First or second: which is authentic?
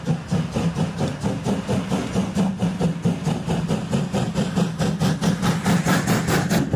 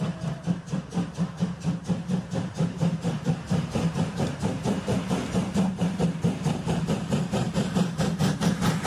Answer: first